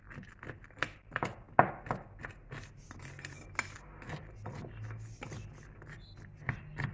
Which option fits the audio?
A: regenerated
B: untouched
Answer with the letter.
B